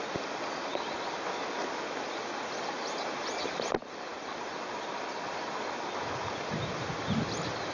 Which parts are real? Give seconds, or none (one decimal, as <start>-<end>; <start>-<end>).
0.0-7.7